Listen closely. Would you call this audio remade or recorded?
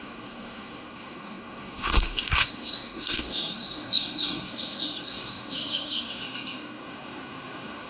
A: remade